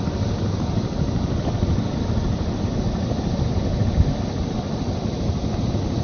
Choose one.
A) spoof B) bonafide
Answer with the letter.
B